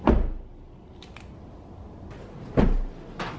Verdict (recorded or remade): recorded